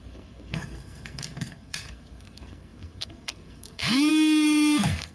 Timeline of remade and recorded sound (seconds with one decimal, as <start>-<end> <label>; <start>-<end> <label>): 0.0-5.1 remade

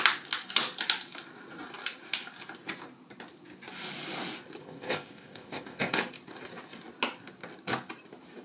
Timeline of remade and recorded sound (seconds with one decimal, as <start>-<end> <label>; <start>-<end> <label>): 0.0-4.6 recorded; 4.6-6.0 remade; 6.0-8.4 recorded

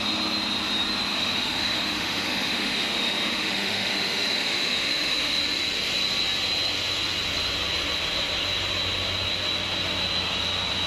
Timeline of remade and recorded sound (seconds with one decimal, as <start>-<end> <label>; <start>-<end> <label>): 0.0-1.1 recorded; 1.1-5.4 remade; 5.4-10.9 recorded

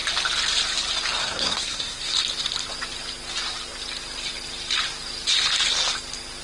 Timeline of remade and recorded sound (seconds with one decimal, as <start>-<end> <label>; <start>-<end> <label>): 0.0-1.2 recorded; 1.2-2.1 remade; 2.1-6.4 recorded

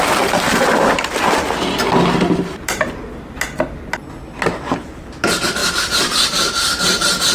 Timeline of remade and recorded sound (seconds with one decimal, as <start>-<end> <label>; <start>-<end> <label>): 0.0-5.6 recorded; 5.6-7.3 remade

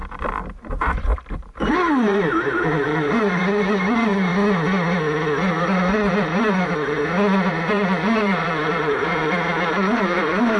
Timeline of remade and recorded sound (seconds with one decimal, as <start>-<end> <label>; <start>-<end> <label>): 0.0-4.3 remade; 4.3-5.5 recorded; 5.5-7.0 remade; 7.0-7.5 recorded; 7.5-10.6 remade

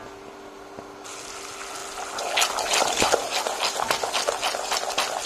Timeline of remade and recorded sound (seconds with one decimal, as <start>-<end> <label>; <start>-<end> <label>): 0.0-5.3 recorded

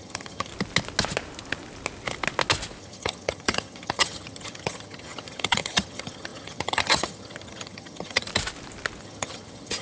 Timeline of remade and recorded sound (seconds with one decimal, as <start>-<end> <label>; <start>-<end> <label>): 0.0-0.5 remade; 0.5-2.8 recorded; 2.8-8.3 remade; 8.3-9.0 recorded; 9.0-9.8 remade